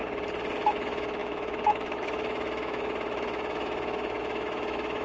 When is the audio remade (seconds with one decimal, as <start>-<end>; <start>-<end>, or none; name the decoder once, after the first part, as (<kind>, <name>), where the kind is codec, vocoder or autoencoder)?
0.7-5.0 (autoencoder, DAC-VAE)